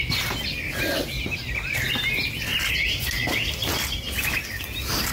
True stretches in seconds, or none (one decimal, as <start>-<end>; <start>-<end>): 0.0-2.5; 3.1-5.1